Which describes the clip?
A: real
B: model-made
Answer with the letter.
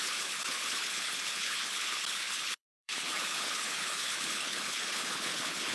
B